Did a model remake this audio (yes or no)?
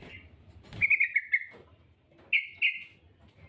no